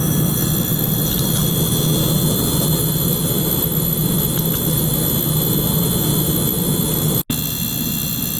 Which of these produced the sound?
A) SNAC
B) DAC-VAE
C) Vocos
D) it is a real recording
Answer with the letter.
D